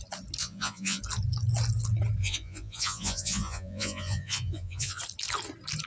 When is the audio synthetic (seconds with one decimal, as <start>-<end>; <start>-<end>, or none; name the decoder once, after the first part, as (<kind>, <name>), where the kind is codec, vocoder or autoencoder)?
0.4-1.0 (vocoder, Vocos); 2.2-5.0